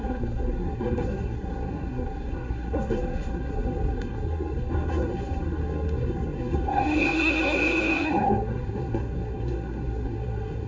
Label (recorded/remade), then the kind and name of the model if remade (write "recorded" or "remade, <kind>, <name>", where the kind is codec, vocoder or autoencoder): remade, codec, SNAC